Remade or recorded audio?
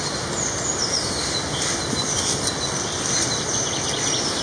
recorded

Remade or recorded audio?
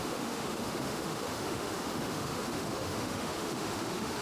remade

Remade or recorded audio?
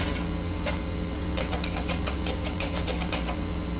remade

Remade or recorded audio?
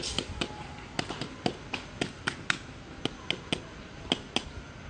recorded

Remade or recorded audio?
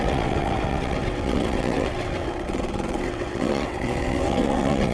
remade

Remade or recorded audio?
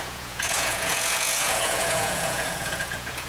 remade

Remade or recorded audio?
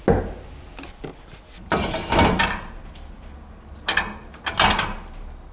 recorded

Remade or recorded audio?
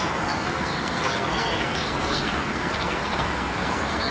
remade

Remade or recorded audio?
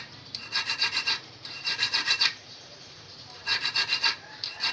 remade